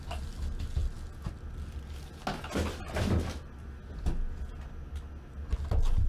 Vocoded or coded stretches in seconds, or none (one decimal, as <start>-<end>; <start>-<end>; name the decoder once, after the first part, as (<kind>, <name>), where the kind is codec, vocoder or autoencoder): none